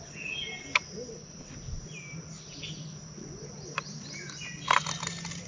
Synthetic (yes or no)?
no